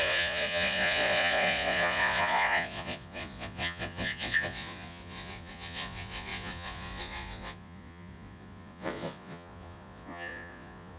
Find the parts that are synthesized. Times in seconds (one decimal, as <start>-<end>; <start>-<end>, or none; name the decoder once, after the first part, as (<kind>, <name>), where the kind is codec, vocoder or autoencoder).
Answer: 0.0-11.0 (vocoder, Vocos)